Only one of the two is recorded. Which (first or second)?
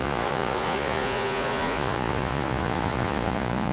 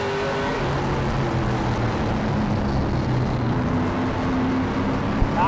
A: second